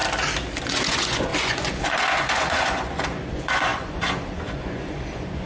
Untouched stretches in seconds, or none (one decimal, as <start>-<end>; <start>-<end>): 0.0-0.6